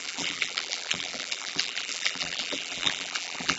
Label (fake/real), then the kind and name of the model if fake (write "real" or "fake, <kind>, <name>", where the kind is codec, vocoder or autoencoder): fake, vocoder, BigVGAN v2